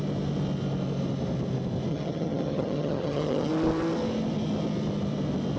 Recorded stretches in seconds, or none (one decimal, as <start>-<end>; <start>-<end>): 0.0-1.9; 3.5-5.6